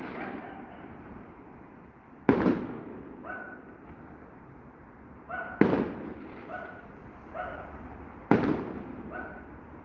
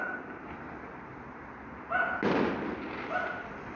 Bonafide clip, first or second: second